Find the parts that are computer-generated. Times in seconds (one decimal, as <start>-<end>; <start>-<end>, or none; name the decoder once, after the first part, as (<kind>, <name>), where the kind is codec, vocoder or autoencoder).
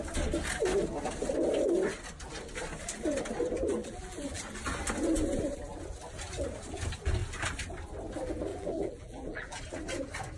3.8-4.4 (vocoder, BigVGAN v2); 8.5-9.6